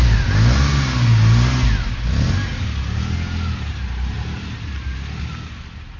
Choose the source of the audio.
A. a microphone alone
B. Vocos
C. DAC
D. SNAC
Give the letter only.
A